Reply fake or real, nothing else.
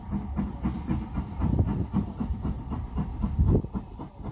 real